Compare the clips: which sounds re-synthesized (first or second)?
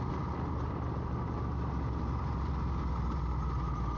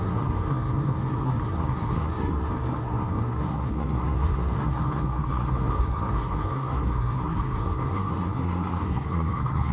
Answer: second